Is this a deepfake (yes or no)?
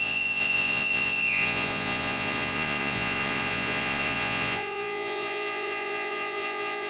yes